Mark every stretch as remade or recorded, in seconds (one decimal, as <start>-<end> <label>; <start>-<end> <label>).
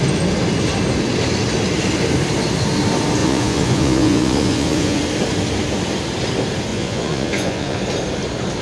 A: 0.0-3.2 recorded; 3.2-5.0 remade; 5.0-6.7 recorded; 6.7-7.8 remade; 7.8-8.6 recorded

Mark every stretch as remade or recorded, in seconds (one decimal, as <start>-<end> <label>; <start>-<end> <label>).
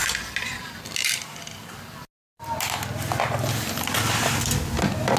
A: 0.0-5.2 recorded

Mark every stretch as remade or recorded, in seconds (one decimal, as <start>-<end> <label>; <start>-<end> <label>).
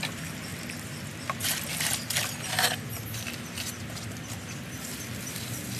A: 0.0-5.8 recorded